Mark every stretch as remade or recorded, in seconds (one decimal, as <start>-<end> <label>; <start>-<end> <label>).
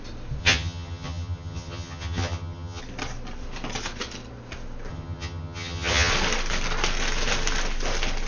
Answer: 0.0-0.4 recorded; 0.4-2.8 remade; 2.8-4.9 recorded; 4.9-6.1 remade; 6.1-8.3 recorded